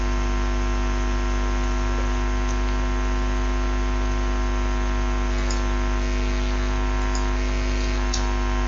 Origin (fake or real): real